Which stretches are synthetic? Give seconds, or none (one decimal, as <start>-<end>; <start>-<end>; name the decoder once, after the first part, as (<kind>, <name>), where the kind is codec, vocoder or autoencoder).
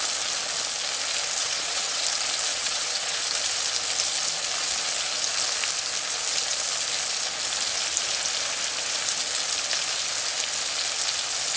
1.4-2.0 (vocoder, WaveNeXt); 2.5-3.2